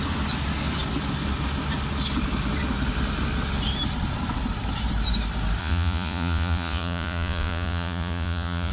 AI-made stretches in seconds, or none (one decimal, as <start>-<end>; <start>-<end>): 5.6-8.7